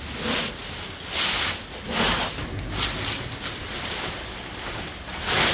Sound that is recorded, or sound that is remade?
recorded